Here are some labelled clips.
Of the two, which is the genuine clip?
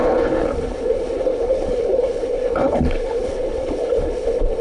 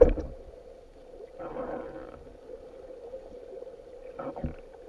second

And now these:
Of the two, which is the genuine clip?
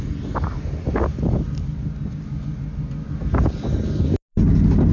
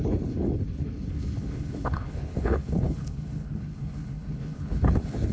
first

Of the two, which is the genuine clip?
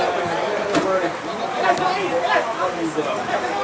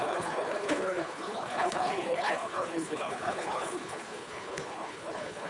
first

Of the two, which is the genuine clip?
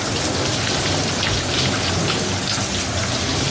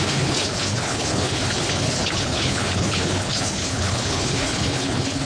first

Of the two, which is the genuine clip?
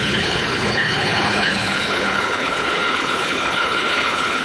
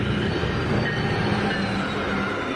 second